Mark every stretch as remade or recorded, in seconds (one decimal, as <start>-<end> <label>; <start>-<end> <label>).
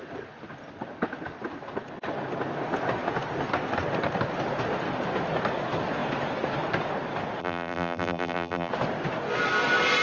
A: 0.0-7.4 recorded; 7.4-8.7 remade; 8.7-10.0 recorded